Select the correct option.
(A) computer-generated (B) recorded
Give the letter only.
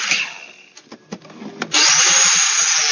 B